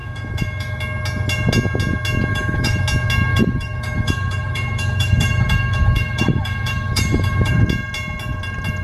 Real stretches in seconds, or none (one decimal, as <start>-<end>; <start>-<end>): 0.8-2.3; 2.8-3.3; 7.5-8.8